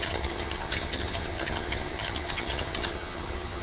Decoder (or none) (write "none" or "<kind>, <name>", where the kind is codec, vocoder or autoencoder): vocoder, HiFi-GAN